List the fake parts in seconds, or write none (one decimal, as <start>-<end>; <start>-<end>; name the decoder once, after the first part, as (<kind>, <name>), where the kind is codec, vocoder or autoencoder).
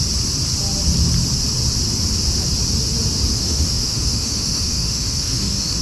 3.3-5.8 (autoencoder, DAC-VAE)